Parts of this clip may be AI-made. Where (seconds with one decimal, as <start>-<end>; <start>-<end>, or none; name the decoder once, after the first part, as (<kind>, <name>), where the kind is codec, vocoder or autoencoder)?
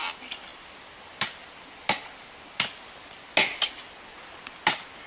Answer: none